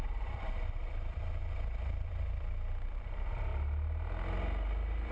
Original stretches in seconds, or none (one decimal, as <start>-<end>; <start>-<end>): 3.5-5.1